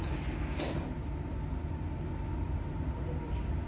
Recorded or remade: recorded